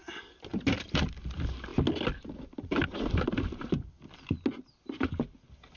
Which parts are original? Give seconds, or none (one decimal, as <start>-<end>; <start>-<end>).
0.0-5.8